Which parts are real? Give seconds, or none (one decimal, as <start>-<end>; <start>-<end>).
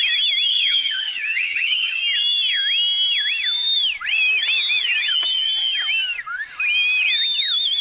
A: 0.0-0.5; 2.0-7.8